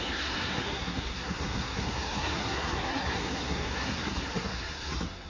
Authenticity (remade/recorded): remade